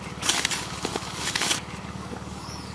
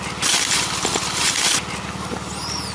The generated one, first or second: first